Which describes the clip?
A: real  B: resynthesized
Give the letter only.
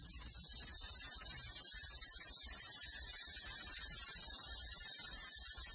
A